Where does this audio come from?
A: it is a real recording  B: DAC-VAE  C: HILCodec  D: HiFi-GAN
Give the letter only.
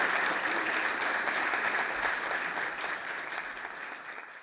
A